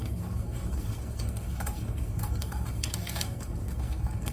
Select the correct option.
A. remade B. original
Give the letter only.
A